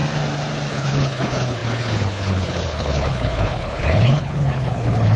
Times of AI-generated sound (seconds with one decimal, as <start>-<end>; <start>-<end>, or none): 0.7-5.2